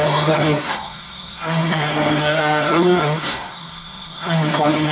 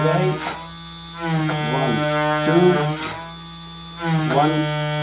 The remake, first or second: first